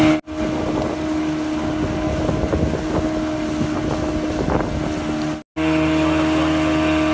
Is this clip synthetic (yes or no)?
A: no